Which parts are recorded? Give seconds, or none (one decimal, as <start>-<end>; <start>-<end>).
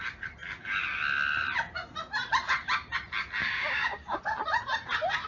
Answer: 0.0-3.4; 4.2-5.3